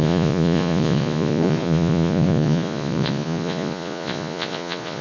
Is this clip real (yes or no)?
no